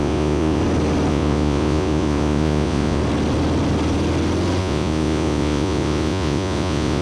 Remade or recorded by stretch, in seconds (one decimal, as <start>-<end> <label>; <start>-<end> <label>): 0.0-0.6 remade; 0.6-1.1 recorded; 1.1-3.0 remade; 3.0-4.6 recorded; 4.6-7.0 remade